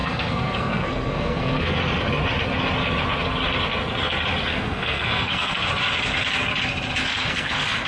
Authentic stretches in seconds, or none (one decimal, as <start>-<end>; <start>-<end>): 1.8-4.5; 5.6-7.1